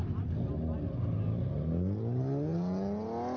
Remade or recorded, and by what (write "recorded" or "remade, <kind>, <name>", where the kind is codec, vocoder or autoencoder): recorded